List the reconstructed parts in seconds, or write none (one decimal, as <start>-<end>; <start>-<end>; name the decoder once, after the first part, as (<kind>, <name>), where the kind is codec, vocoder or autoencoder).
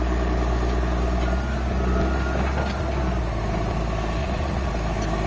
4.2-4.7 (vocoder, Vocos)